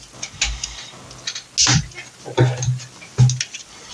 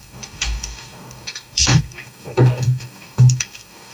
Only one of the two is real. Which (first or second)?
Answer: first